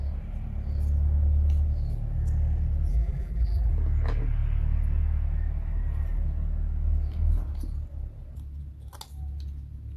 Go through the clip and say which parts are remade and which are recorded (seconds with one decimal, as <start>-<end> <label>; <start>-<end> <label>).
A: 0.0-2.9 recorded; 2.9-3.7 remade; 3.7-10.0 recorded